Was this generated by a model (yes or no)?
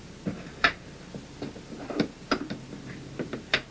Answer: no